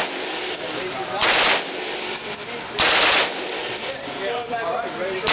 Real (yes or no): yes